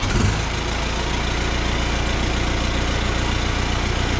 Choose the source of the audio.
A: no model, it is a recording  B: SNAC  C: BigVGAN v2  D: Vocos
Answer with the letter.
A